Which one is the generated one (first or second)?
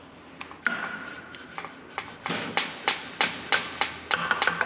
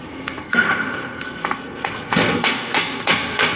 second